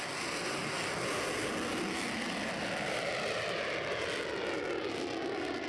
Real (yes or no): yes